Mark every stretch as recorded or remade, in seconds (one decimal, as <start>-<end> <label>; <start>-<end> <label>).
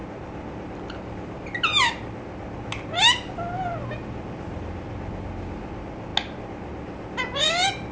0.0-7.9 recorded